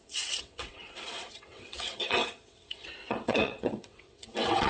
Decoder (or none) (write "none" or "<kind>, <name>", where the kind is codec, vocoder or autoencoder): vocoder, WaveNeXt